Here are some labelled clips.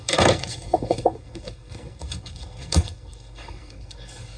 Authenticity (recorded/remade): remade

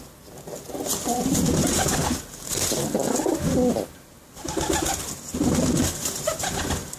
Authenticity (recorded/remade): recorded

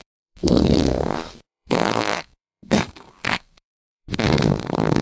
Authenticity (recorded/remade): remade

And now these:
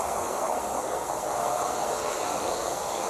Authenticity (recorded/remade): remade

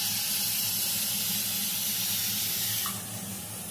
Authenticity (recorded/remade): recorded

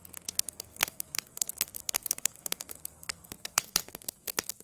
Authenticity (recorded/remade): remade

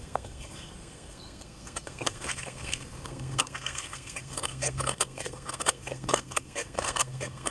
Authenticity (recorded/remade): remade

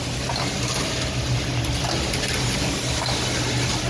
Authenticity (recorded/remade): recorded